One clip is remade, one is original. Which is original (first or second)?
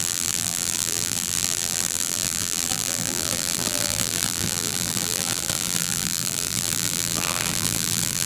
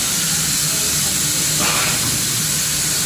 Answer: second